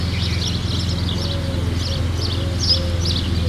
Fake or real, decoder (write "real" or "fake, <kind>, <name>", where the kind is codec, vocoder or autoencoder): real